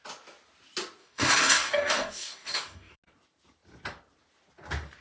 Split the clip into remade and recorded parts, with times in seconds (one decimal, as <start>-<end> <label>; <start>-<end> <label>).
0.0-1.0 recorded; 1.0-3.0 remade; 3.0-5.0 recorded